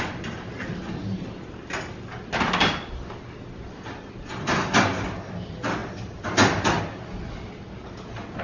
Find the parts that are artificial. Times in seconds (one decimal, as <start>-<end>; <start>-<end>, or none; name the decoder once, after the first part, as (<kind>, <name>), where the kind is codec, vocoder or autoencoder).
none